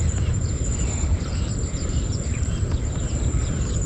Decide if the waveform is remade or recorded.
remade